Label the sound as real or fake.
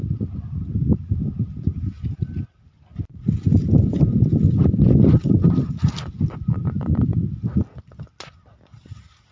real